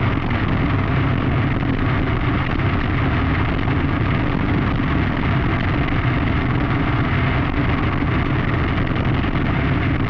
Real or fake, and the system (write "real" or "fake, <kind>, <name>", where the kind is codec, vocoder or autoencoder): real